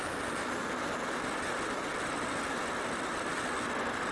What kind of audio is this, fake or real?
real